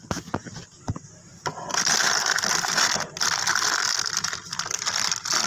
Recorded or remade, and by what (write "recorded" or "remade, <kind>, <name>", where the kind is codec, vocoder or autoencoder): recorded